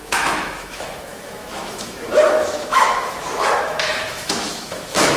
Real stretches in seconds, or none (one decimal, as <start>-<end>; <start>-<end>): none